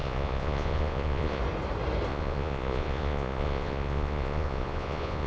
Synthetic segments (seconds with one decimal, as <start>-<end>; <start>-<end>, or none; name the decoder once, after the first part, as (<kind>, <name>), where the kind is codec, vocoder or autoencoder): 0.0-1.4 (vocoder, Vocos); 2.1-5.3